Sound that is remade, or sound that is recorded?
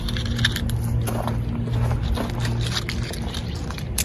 recorded